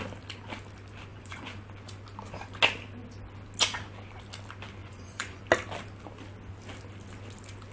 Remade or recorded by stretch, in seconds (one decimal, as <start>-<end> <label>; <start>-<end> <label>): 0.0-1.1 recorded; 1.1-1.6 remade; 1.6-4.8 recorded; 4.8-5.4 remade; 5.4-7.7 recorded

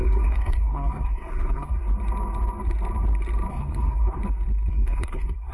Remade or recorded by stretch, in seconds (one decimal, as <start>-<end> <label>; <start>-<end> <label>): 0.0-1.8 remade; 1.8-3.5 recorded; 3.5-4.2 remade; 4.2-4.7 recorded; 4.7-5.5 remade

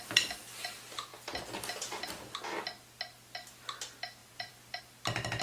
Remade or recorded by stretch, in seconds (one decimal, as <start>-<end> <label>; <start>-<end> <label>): 0.0-5.4 recorded

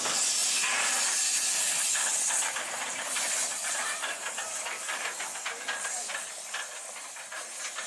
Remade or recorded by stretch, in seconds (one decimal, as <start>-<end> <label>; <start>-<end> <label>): 0.0-7.9 recorded

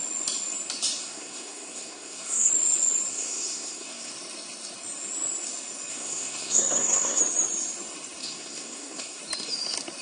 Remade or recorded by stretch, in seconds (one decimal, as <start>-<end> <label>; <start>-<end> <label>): 0.0-1.0 recorded; 1.0-2.5 remade; 2.5-3.1 recorded; 3.1-4.1 remade; 4.1-5.9 recorded; 5.9-7.2 remade; 7.2-8.2 recorded; 8.2-9.2 remade; 9.2-10.0 recorded

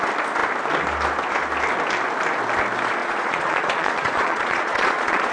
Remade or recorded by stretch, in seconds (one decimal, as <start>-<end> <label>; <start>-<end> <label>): 0.0-3.0 recorded; 3.0-5.3 remade

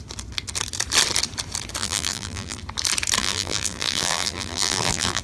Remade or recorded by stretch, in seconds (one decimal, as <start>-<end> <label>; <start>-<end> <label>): 0.0-1.8 recorded; 1.8-2.6 remade; 2.6-3.2 recorded; 3.2-5.2 remade

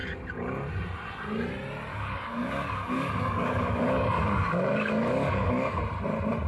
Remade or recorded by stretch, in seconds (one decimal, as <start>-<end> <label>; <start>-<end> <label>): 0.0-1.9 recorded; 1.9-5.8 remade; 5.8-6.5 recorded